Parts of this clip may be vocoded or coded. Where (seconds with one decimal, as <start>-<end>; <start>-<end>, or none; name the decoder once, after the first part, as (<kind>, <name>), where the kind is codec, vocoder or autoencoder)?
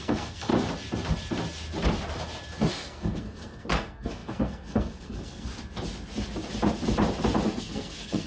0.0-0.5 (codec, SNAC); 2.7-5.5; 7.6-8.3